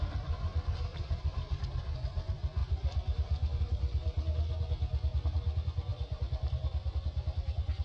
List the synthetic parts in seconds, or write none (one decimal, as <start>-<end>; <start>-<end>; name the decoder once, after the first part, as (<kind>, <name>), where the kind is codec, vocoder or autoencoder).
0.9-1.7 (vocoder, BigVGAN v2); 2.6-3.6; 5.9-7.8